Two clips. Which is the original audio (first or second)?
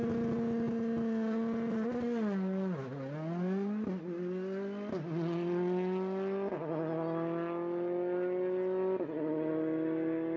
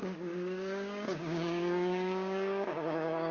first